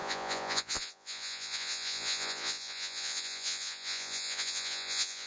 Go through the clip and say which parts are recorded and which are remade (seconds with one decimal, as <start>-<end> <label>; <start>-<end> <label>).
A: 0.0-5.3 remade